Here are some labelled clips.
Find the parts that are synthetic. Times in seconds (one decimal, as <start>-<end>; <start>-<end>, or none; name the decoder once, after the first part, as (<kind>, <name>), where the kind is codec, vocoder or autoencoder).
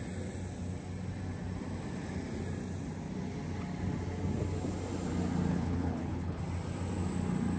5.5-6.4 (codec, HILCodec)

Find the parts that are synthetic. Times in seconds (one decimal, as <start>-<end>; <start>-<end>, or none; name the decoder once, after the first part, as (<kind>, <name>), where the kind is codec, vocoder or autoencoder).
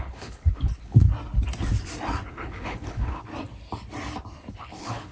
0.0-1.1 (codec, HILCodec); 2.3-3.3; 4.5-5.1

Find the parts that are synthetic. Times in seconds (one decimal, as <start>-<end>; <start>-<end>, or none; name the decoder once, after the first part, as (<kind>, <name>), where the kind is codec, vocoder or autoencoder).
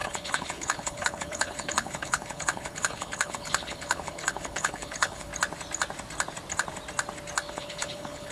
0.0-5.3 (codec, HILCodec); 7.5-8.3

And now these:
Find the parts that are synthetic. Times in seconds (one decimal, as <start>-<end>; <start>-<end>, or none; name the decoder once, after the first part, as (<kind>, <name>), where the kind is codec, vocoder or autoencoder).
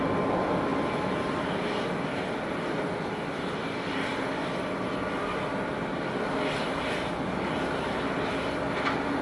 none